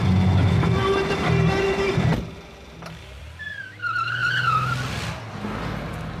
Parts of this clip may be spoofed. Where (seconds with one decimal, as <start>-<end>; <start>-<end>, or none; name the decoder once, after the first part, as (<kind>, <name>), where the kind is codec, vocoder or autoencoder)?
none